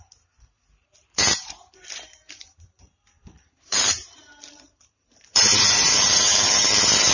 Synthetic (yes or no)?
yes